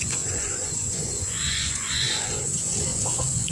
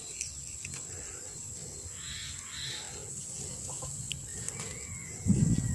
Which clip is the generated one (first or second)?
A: first